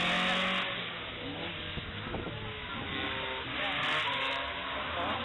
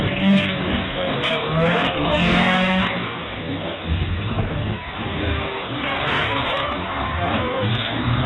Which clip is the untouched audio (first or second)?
first